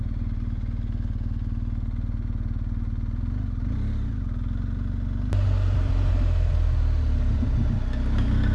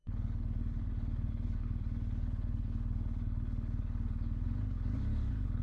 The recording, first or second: first